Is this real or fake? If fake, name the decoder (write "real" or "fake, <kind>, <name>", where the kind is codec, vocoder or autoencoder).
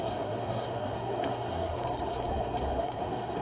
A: fake, codec, SNAC